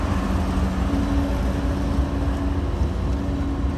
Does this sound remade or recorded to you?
recorded